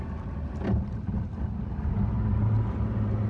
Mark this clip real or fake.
real